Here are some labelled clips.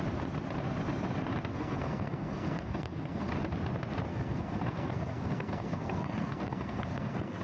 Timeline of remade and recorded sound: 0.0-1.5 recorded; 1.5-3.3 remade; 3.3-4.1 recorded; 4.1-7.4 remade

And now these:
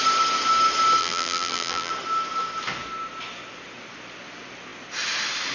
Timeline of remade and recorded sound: 0.0-1.0 recorded; 1.0-1.9 remade; 1.9-5.5 recorded

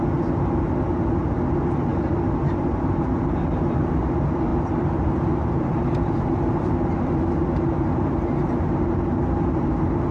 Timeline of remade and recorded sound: 0.0-4.5 recorded; 4.5-8.4 remade; 8.4-10.1 recorded

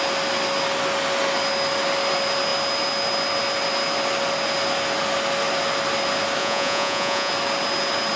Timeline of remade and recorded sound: 0.0-6.4 recorded; 6.4-7.3 remade; 7.3-8.2 recorded

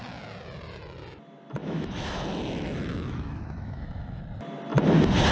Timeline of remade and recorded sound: 0.0-1.6 recorded; 1.6-4.2 remade; 4.2-5.3 recorded

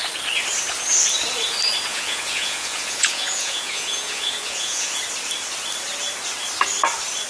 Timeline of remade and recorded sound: 0.0-1.9 recorded; 1.9-5.0 remade; 5.0-7.3 recorded

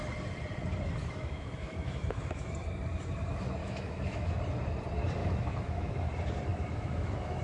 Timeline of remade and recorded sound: 0.0-1.0 recorded; 1.0-2.5 remade; 2.5-3.6 recorded; 3.6-4.4 remade; 4.4-5.2 recorded; 5.2-6.1 remade; 6.1-6.5 recorded; 6.5-7.4 remade